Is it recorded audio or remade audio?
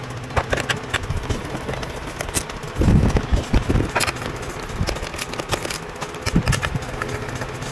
recorded